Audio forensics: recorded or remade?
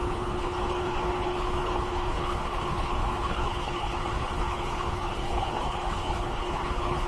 remade